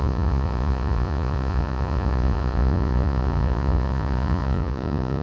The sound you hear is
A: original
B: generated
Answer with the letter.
B